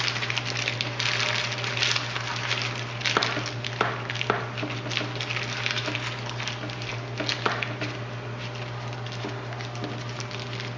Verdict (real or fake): real